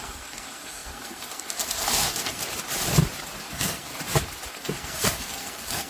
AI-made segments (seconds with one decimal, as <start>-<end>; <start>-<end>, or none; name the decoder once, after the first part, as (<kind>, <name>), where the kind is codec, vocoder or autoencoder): 0.0-2.4 (codec, SNAC); 3.4-3.9; 4.5-5.9

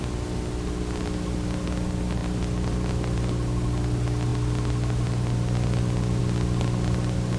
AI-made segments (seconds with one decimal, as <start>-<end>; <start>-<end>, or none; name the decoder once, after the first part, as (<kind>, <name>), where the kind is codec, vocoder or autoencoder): none

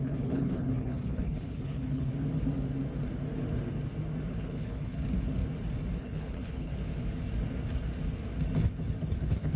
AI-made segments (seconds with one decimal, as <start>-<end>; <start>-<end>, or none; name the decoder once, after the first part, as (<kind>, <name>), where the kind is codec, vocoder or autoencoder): 0.0-2.1 (codec, HILCodec); 4.4-5.0; 6.0-6.7; 9.2-9.6